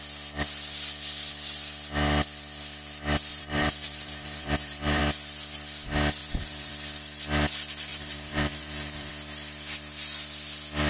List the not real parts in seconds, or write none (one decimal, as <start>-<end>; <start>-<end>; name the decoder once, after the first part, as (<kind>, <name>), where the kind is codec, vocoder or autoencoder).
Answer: 3.3-5.0 (vocoder, BigVGAN v2); 6.2-6.7; 7.9-9.1